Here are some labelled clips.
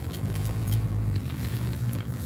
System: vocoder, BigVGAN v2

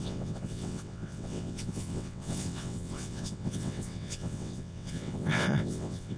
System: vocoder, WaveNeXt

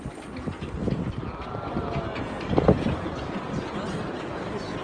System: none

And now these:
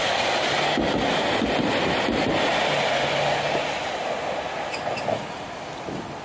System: none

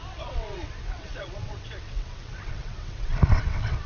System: vocoder, WaveNeXt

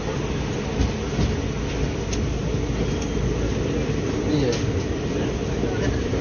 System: none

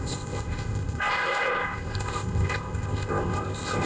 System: codec, ZipCodec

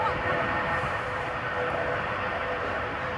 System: vocoder, BigVGAN v2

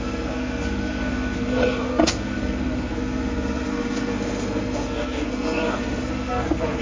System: codec, SNAC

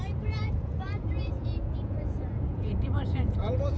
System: vocoder, Vocos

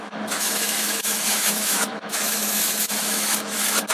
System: autoencoder, DAC-VAE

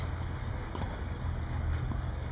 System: codec, DAC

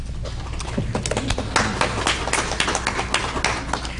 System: none